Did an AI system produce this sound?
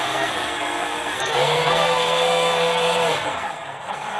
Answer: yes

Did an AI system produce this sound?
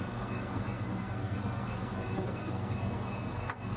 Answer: yes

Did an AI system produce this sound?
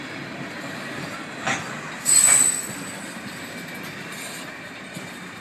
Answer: no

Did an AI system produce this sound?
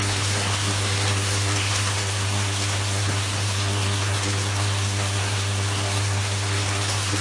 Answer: yes